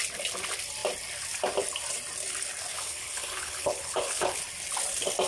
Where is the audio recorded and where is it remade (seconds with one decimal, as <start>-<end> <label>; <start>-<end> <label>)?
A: 0.0-2.7 recorded; 2.7-4.4 remade; 4.4-5.3 recorded

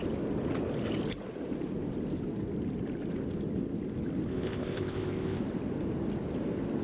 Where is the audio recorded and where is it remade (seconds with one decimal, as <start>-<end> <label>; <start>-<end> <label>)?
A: 0.0-4.3 recorded; 4.3-5.4 remade; 5.4-6.8 recorded

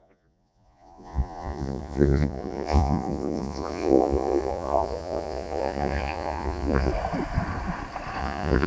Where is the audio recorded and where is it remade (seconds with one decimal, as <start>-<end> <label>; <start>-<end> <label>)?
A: 0.0-6.9 remade; 6.9-8.2 recorded; 8.2-8.7 remade

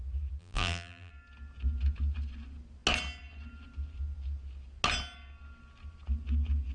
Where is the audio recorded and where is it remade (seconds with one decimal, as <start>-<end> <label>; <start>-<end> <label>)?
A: 0.0-0.4 recorded; 0.4-1.1 remade; 1.1-6.7 recorded

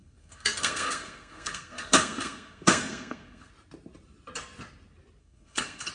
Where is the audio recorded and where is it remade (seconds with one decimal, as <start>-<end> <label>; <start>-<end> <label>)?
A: 0.0-3.5 remade; 3.5-5.2 recorded; 5.2-5.9 remade

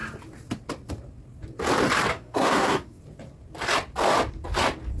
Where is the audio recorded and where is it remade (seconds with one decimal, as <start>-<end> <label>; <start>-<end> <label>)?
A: 0.0-2.1 recorded; 2.1-3.0 remade; 3.0-5.0 recorded